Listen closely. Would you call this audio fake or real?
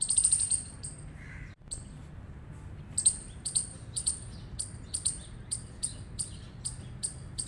real